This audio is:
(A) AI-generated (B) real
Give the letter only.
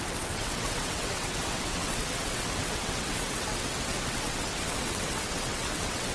A